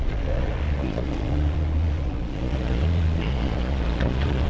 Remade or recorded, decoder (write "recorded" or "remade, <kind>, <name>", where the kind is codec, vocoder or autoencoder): remade, vocoder, Vocos